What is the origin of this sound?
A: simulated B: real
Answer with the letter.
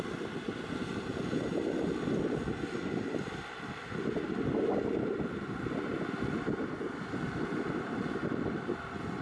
B